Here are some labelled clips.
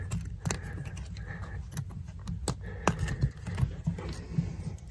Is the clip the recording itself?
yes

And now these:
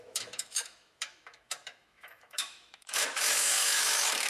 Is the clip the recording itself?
no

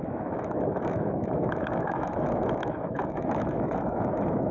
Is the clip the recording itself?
no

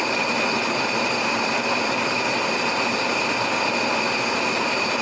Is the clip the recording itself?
yes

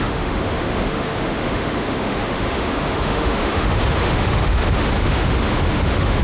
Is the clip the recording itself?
no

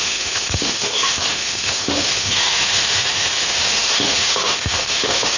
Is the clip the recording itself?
no